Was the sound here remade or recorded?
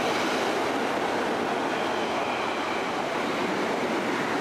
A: recorded